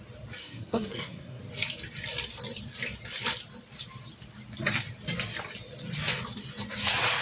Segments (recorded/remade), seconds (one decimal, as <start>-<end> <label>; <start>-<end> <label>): 0.0-0.4 recorded; 0.4-1.4 remade; 1.4-7.2 recorded